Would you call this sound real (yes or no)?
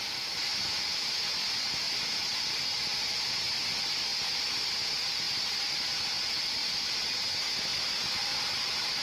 yes